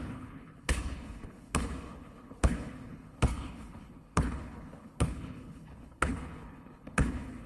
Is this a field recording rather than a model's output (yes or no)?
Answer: no